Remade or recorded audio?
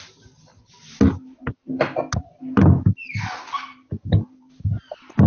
recorded